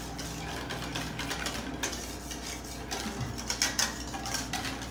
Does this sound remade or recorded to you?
recorded